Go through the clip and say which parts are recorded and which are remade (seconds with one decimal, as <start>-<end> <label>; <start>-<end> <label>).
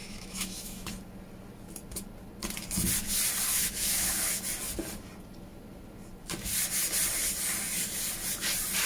0.0-0.9 remade; 0.9-3.5 recorded; 3.5-4.4 remade; 4.4-8.9 recorded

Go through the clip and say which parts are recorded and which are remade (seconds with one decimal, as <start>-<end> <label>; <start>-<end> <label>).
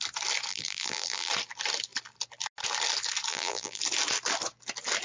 0.0-0.5 recorded; 0.5-1.3 remade; 1.3-3.3 recorded; 3.3-3.8 remade; 3.8-5.0 recorded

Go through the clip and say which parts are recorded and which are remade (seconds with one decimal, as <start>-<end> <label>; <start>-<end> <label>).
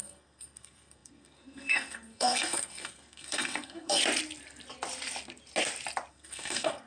0.0-4.0 remade; 4.0-6.1 recorded; 6.1-6.9 remade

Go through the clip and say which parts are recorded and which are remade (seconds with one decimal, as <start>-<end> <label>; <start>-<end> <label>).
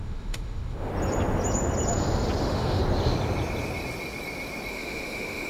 0.0-0.9 remade; 0.9-2.4 recorded; 2.4-2.8 remade; 2.8-4.7 recorded; 4.7-5.5 remade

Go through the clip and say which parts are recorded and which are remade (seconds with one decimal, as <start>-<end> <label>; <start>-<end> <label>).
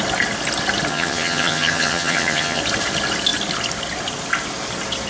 0.0-0.9 recorded; 0.9-2.6 remade; 2.6-5.1 recorded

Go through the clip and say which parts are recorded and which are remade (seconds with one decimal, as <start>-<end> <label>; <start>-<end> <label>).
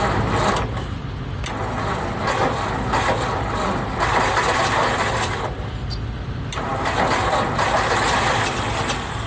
0.0-9.3 recorded